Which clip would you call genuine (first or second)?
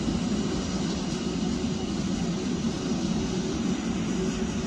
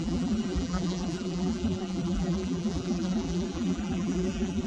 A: first